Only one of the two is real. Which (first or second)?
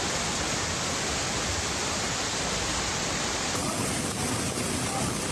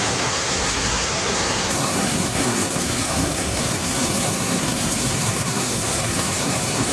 first